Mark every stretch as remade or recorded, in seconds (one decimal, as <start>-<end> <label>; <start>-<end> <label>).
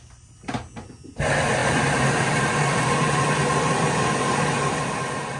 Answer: 0.0-1.6 recorded; 1.6-4.8 remade; 4.8-5.4 recorded